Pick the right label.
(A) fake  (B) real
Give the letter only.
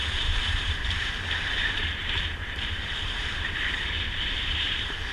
A